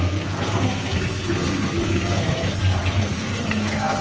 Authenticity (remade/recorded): remade